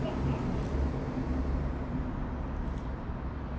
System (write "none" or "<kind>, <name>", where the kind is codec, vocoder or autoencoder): none